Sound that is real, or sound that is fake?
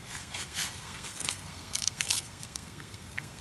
fake